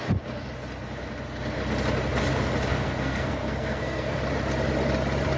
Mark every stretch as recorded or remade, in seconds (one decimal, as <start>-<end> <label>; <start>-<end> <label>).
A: 0.0-2.7 recorded; 2.7-4.2 remade; 4.2-5.4 recorded